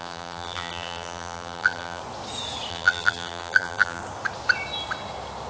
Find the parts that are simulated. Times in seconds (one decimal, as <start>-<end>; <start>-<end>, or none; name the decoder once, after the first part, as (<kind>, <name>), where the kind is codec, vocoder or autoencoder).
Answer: 0.0-2.0 (vocoder, BigVGAN v2); 2.7-4.0